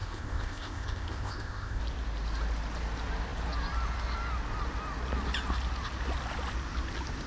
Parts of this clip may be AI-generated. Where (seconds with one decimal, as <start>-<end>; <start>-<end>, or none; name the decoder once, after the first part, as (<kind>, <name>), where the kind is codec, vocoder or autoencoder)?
0.0-1.8 (codec, ZipCodec)